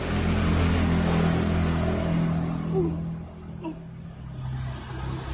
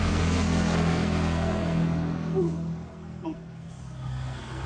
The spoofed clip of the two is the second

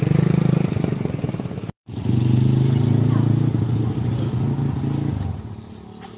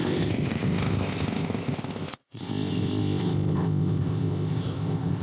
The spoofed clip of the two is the second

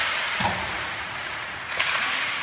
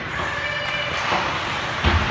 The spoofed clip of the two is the first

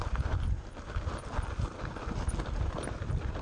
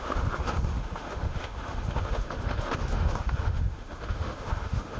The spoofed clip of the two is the second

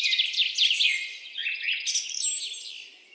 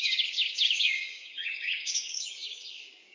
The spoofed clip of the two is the second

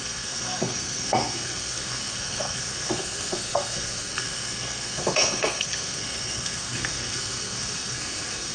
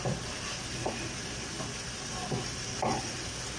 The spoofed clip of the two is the first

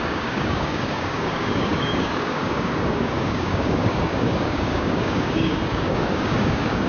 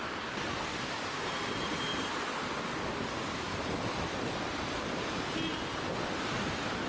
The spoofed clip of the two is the first